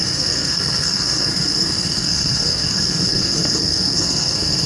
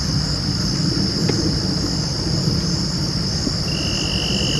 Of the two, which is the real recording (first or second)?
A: second